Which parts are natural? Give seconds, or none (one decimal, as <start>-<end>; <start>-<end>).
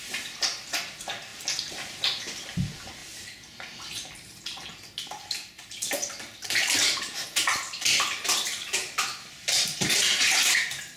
0.0-1.3; 2.0-3.0; 4.6-11.0